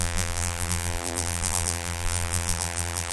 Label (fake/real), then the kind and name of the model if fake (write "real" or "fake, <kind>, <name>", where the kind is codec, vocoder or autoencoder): fake, vocoder, BigVGAN v2